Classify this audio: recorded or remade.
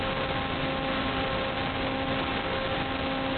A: recorded